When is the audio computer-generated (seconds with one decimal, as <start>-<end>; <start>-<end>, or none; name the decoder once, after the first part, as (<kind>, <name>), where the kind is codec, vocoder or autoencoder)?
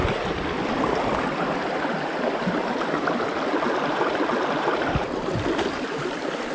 none